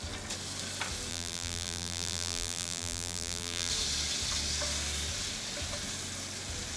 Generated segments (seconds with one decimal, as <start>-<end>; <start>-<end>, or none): 1.1-3.7